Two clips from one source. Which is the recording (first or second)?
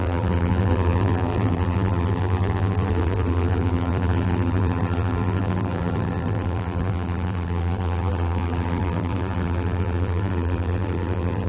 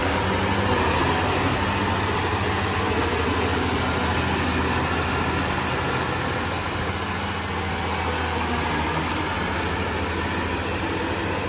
second